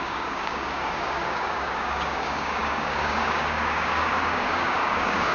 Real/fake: fake